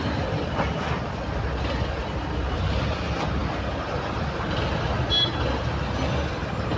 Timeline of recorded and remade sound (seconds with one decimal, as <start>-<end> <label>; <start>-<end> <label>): 0.0-2.0 recorded; 2.0-2.6 remade; 2.6-6.8 recorded